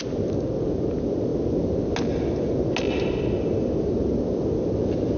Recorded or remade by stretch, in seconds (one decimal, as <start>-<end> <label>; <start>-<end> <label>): 0.0-5.2 recorded